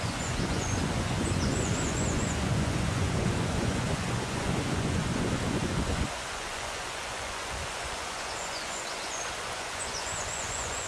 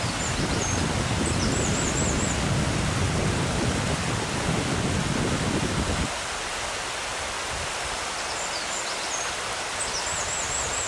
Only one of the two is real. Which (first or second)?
second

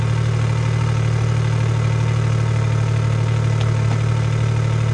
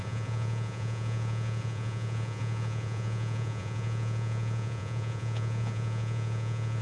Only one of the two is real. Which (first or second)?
first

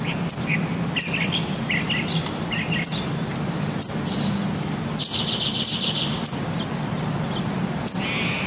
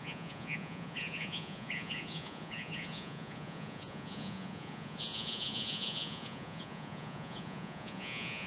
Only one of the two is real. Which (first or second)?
first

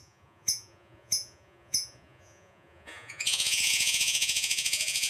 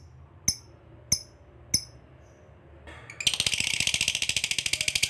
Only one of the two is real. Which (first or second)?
second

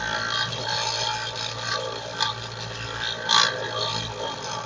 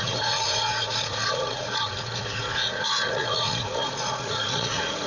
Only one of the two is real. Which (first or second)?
first